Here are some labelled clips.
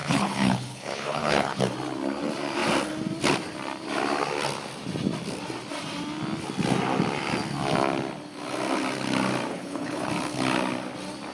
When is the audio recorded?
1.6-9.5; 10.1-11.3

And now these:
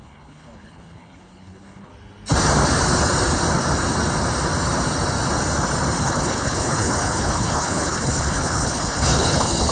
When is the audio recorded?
1.9-6.0

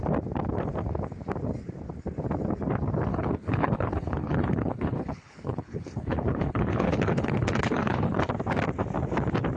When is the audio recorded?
0.0-3.1; 8.2-9.6

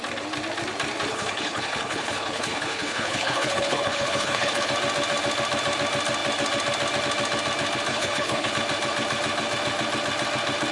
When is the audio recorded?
0.0-1.1; 4.7-7.9; 8.5-10.7

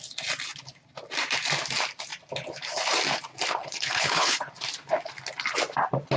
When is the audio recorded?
0.0-3.6; 4.5-6.2

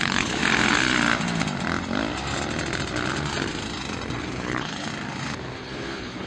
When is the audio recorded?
0.4-4.2; 4.9-5.6

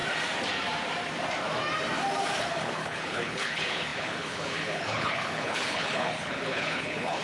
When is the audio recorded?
0.0-2.4

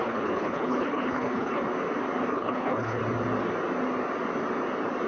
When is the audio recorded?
1.6-2.3; 3.0-5.1